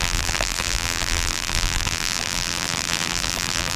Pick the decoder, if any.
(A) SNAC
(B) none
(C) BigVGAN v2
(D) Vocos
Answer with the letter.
C